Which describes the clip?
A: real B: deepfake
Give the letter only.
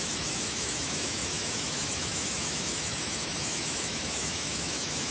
B